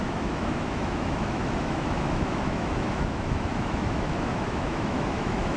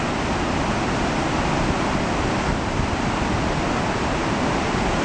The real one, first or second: second